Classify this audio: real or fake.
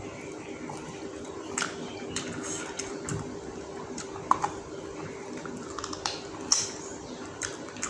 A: fake